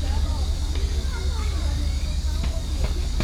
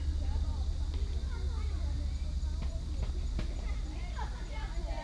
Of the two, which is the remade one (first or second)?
first